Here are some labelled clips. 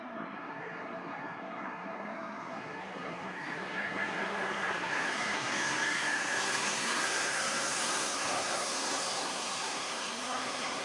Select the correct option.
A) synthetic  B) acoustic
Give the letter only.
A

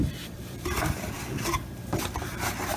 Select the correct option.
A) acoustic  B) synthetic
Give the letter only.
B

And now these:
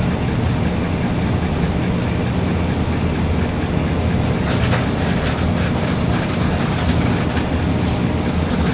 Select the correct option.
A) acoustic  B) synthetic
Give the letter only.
A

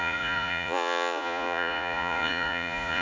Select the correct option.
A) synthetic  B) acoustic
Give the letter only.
A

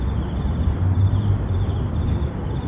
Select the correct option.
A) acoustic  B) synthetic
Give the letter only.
A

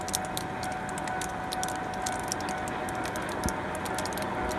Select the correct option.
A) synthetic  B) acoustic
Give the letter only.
B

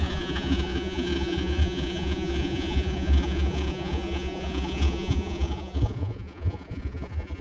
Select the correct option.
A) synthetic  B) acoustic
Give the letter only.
A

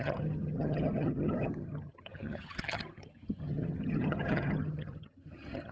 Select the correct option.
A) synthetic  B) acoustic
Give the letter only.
A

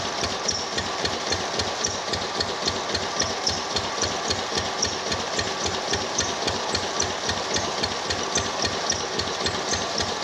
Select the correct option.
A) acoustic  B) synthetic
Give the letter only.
A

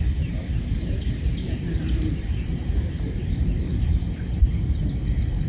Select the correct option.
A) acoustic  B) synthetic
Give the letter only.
B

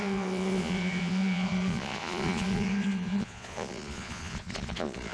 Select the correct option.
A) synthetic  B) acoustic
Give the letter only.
A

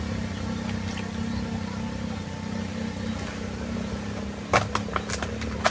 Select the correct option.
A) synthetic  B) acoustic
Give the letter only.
B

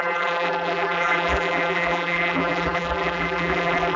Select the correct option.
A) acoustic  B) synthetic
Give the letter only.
B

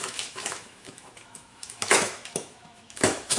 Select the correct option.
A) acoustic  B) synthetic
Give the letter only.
B